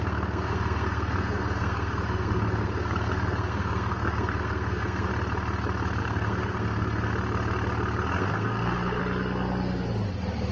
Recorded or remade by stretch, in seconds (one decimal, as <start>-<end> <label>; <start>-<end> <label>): 0.0-5.1 remade; 5.1-6.0 recorded; 6.0-7.1 remade; 7.1-8.2 recorded; 8.2-9.0 remade; 9.0-10.5 recorded

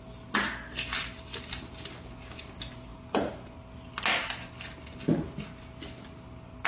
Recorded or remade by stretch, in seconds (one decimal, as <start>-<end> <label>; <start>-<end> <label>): 0.0-6.7 recorded

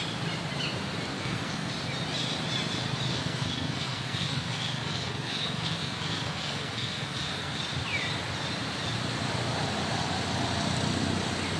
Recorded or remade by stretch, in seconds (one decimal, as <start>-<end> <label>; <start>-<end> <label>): 0.0-1.1 recorded; 1.1-1.7 remade; 1.7-3.1 recorded; 3.1-7.6 remade; 7.6-11.6 recorded

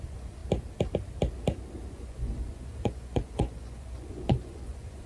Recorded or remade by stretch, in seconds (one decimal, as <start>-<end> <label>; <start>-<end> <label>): 0.0-0.4 remade; 0.4-1.9 recorded; 1.9-5.1 remade

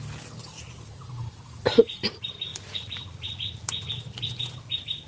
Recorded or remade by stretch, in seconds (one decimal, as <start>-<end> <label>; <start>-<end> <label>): 0.0-5.1 recorded